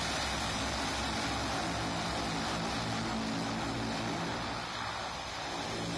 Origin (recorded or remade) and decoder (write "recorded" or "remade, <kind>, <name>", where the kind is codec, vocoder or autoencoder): recorded